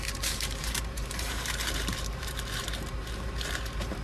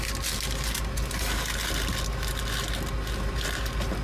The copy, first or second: first